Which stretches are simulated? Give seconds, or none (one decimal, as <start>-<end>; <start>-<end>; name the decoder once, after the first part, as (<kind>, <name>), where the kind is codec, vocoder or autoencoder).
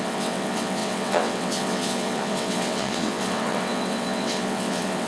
0.0-5.1 (vocoder, WaveNeXt)